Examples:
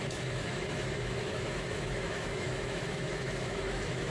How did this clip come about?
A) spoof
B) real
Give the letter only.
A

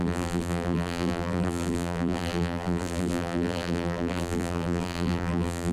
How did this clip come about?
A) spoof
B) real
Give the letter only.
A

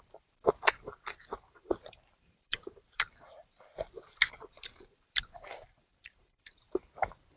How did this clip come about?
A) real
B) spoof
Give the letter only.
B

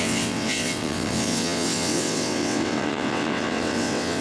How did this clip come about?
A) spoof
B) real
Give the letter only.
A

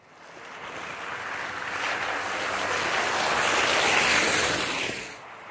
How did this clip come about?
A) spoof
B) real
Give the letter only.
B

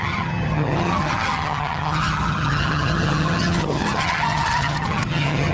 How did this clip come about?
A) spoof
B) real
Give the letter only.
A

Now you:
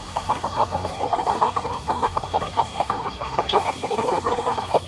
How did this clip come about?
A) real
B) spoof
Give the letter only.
B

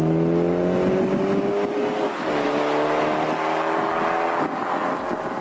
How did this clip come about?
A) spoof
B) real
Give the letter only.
B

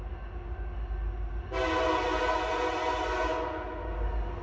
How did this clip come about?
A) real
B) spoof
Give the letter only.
A